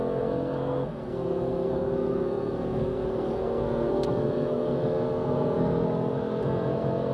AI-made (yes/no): yes